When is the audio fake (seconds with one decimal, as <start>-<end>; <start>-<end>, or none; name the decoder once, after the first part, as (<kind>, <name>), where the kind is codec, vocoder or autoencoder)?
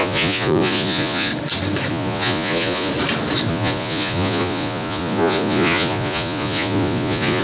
0.0-1.3 (vocoder, Vocos); 1.9-2.9; 3.5-7.4